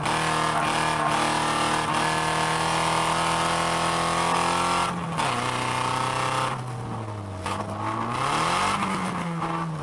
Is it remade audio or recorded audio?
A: recorded